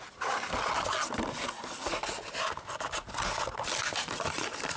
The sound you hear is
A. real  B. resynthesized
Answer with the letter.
A